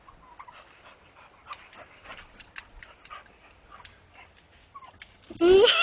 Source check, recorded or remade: recorded